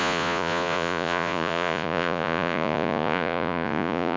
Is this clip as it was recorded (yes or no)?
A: no